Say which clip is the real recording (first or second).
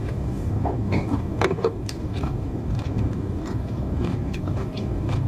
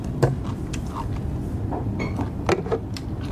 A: second